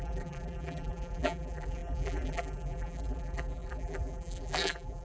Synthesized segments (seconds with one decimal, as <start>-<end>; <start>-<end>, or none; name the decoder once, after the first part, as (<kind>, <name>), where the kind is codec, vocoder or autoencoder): 0.0-5.0 (vocoder, BigVGAN v2)